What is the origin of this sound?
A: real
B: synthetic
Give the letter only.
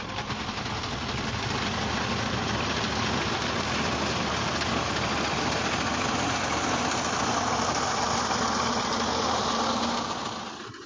A